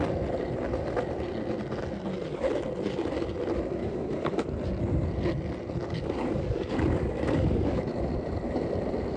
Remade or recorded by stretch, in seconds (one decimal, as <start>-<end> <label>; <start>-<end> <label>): 0.0-3.8 recorded; 3.8-4.5 remade; 4.5-5.8 recorded; 5.8-7.8 remade; 7.8-9.2 recorded